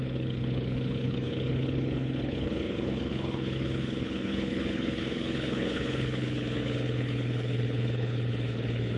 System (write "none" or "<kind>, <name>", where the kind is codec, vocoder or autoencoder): codec, HILCodec